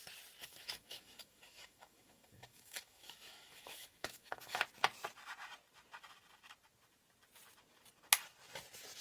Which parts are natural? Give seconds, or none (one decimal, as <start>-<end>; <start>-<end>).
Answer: 0.0-0.4; 4.6-9.0